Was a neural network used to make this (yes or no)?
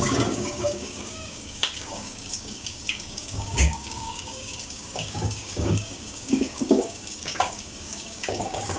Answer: yes